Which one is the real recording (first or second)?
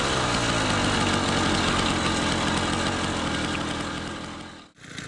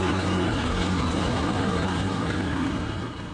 first